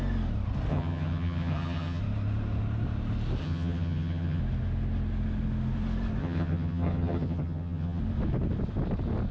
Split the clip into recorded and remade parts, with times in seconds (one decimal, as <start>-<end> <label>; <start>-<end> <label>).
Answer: 0.0-0.7 recorded; 0.7-2.0 remade; 2.0-3.4 recorded; 3.4-4.4 remade; 4.4-6.2 recorded; 6.2-8.0 remade; 8.0-9.3 recorded